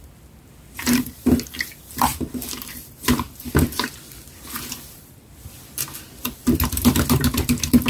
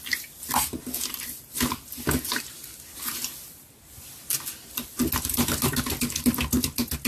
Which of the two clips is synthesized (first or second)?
first